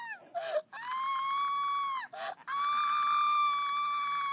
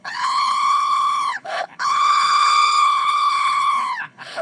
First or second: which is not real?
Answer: second